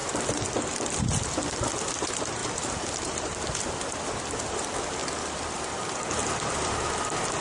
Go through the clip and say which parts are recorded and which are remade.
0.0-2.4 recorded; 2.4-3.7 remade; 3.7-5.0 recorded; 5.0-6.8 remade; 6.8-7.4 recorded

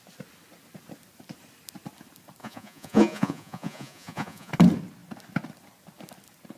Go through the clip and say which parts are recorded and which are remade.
0.0-2.4 recorded; 2.4-4.5 remade; 4.5-6.6 recorded

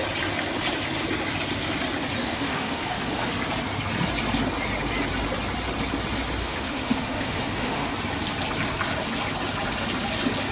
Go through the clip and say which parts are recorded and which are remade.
0.0-2.2 recorded; 2.2-3.3 remade; 3.3-6.4 recorded; 6.4-7.9 remade; 7.9-10.5 recorded

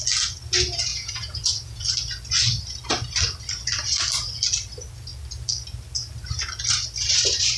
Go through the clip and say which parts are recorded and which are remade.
0.0-0.9 recorded; 0.9-1.8 remade; 1.8-7.6 recorded